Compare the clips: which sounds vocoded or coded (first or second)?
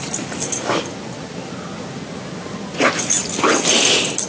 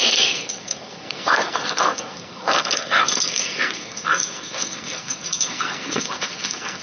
second